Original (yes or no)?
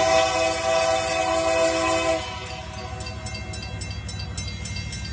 yes